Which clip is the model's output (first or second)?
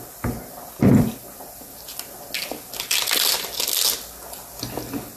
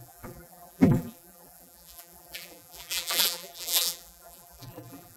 second